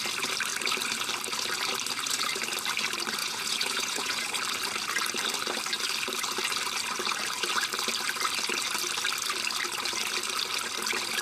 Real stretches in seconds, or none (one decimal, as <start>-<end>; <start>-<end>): 0.0-3.2; 4.3-11.2